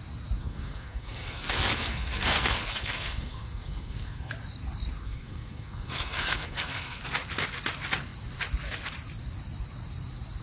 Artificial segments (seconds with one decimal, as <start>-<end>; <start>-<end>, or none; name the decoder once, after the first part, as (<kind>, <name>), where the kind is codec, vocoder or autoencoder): 0.4-4.3 (codec, SNAC); 5.0-7.0